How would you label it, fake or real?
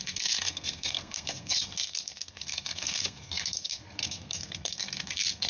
fake